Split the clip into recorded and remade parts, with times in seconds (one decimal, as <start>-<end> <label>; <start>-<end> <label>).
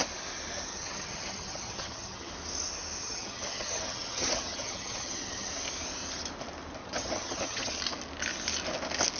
0.0-0.7 recorded; 0.7-2.3 remade; 2.3-3.0 recorded; 3.0-5.5 remade; 5.5-6.8 recorded; 6.8-7.7 remade; 7.7-9.2 recorded